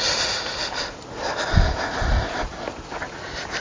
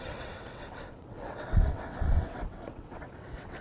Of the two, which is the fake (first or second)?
second